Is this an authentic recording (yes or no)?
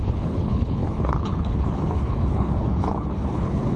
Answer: no